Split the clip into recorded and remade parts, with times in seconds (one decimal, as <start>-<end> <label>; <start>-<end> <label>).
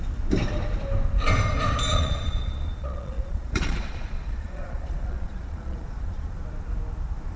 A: 0.0-1.9 recorded; 1.9-6.3 remade; 6.3-7.4 recorded